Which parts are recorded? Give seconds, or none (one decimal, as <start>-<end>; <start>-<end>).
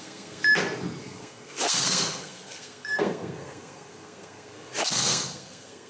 0.4-1.0